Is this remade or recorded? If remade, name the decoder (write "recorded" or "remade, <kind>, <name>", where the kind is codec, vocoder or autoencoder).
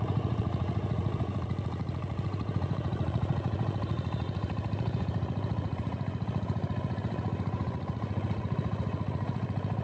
remade, vocoder, Vocos